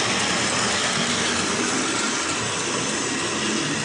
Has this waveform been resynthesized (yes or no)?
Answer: no